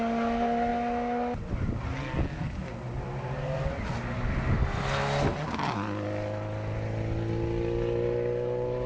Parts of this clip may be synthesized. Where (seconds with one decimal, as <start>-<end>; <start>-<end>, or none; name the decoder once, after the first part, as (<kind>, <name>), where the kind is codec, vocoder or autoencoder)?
none